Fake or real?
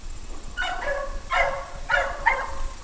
fake